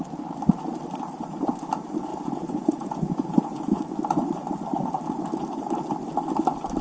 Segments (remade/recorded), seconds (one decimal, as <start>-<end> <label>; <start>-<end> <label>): 0.0-2.1 recorded; 2.1-3.8 remade; 3.8-6.8 recorded